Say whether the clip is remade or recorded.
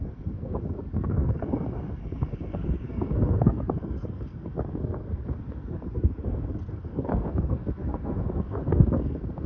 remade